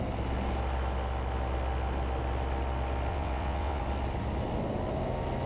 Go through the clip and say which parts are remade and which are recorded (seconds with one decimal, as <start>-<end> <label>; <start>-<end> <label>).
0.0-3.1 recorded; 3.1-3.8 remade; 3.8-5.5 recorded